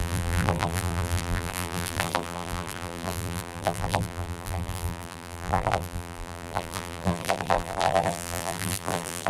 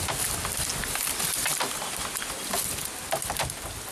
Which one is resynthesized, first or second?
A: first